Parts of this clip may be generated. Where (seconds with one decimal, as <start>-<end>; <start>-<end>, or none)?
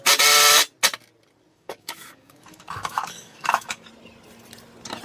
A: 1.5-3.9